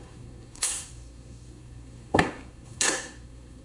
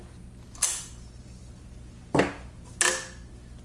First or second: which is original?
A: second